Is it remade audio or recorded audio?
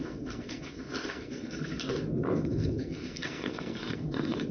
remade